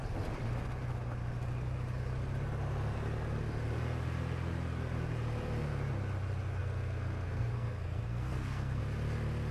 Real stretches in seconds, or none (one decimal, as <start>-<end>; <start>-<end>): 0.0-6.6; 8.8-9.5